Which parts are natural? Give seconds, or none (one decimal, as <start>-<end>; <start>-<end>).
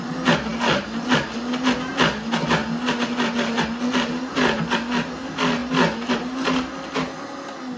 0.0-7.8